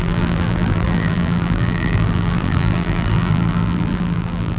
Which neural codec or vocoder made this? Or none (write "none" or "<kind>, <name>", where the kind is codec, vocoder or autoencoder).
vocoder, BigVGAN v2